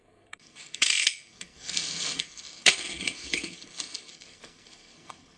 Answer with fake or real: fake